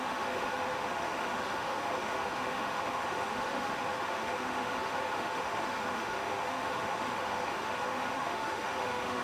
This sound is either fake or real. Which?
fake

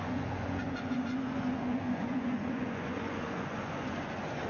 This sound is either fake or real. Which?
fake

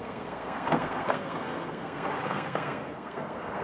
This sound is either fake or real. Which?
fake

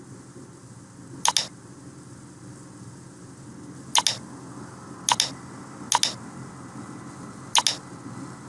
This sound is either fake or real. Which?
real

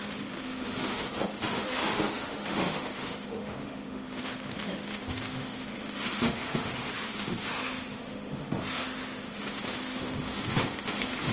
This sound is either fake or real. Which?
fake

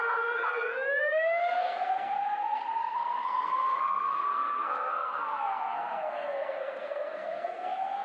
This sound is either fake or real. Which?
fake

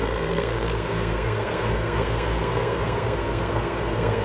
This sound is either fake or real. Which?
fake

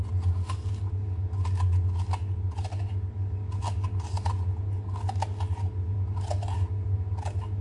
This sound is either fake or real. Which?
real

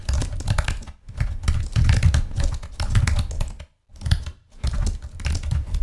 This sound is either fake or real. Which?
real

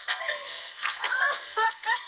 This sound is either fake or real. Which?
fake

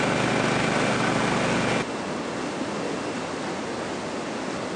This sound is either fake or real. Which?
real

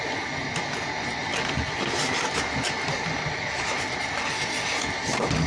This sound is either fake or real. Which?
real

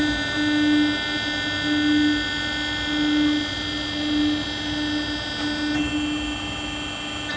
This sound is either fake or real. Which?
real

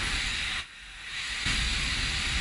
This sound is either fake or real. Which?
real